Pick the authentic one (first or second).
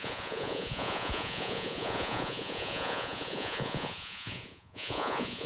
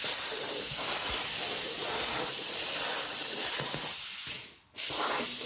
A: second